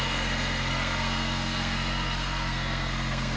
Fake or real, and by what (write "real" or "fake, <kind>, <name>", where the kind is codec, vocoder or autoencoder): fake, codec, SNAC